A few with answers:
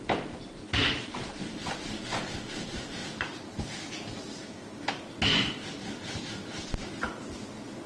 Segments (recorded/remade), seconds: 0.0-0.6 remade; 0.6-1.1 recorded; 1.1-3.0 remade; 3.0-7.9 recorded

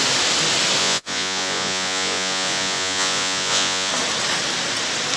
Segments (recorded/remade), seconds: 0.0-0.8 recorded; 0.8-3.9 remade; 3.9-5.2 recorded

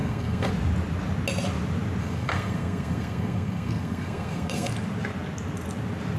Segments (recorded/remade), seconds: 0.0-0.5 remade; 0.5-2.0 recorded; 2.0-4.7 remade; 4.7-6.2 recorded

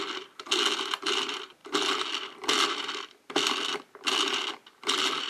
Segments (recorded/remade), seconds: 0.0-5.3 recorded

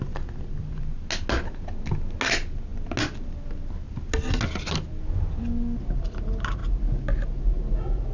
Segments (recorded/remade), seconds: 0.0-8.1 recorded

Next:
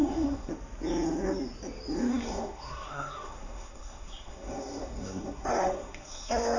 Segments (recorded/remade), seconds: 0.0-0.5 remade; 0.5-2.1 recorded; 2.1-6.6 remade

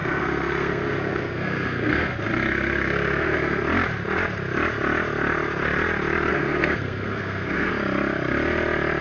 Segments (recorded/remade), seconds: 0.0-3.6 remade; 3.6-6.3 recorded; 6.3-7.7 remade; 7.7-9.0 recorded